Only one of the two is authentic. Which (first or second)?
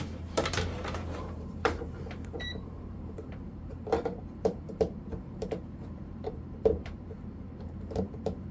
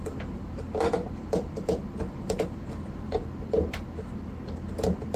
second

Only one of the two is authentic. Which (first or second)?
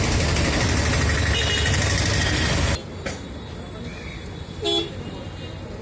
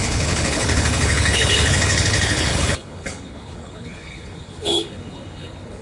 first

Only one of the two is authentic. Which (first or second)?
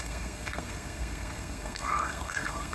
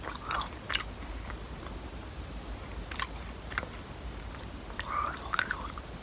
second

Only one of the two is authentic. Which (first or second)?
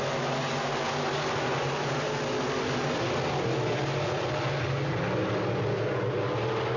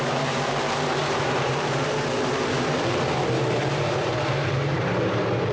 first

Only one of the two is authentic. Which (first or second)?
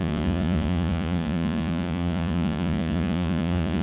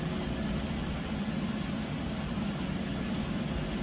second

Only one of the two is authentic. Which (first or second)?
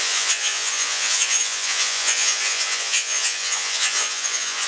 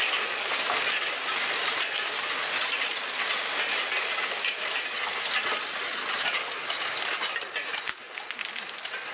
second